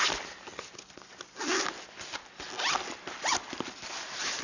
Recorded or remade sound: recorded